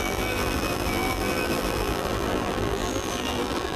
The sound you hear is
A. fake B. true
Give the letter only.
A